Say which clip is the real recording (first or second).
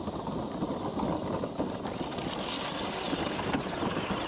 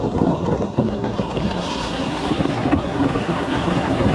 first